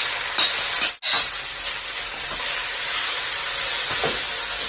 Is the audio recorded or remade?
recorded